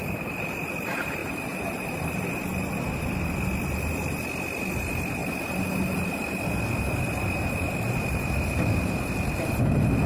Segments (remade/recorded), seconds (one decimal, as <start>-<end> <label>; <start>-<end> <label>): 0.0-1.2 recorded; 1.2-2.4 remade; 2.4-5.2 recorded; 5.2-8.4 remade; 8.4-10.1 recorded